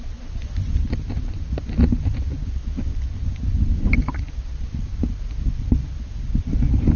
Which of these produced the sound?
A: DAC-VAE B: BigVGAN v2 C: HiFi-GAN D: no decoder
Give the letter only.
D